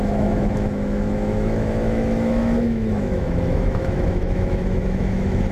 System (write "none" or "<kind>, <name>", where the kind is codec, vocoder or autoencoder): autoencoder, DAC-VAE